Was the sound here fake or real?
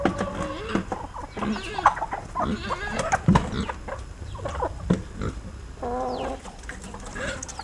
real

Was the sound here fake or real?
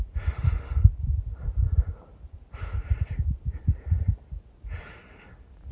real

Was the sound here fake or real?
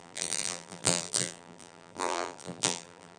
fake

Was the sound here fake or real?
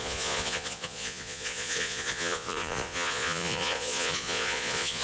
fake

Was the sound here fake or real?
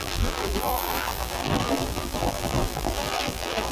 fake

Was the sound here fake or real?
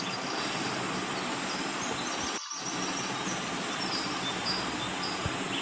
real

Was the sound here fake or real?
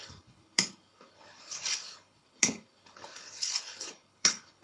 fake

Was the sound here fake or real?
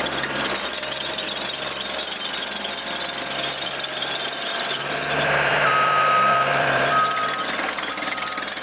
fake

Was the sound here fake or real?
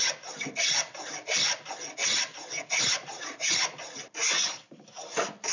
real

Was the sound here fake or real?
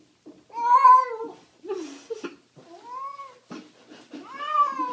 real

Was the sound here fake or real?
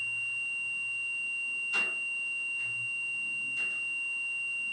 real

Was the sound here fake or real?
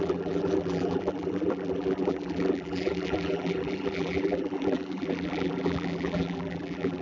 fake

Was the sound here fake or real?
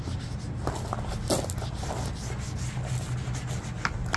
real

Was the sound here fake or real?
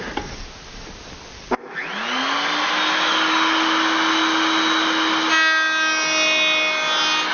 real